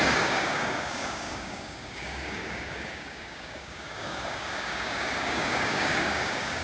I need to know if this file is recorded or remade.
remade